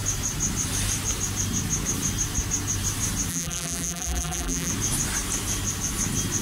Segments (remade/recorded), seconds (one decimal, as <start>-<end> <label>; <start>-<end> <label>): 0.0-3.3 recorded; 3.3-4.7 remade; 4.7-6.4 recorded